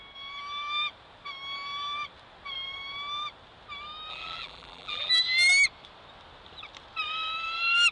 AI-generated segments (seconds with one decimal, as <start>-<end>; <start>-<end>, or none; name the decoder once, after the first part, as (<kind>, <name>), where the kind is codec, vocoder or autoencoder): 4.1-5.1 (vocoder, BigVGAN v2)